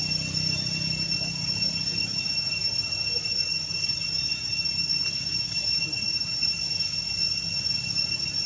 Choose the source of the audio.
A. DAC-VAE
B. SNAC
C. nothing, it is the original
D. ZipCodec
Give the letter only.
C